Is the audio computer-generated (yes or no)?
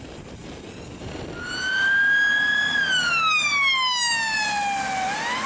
no